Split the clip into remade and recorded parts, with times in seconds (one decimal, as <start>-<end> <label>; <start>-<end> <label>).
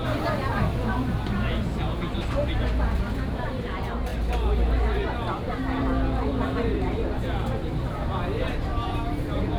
0.0-4.1 remade; 4.1-5.6 recorded; 5.6-9.6 remade